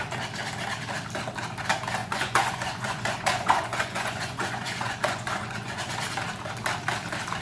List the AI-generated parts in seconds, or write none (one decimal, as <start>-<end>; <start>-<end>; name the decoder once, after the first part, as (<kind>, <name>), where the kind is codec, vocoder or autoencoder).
2.0-5.9 (vocoder, Vocos)